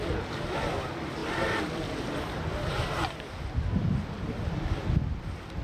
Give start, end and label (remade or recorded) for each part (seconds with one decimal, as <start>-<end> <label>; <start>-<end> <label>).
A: 0.0-5.6 recorded